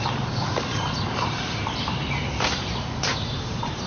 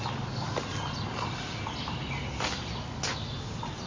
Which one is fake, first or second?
first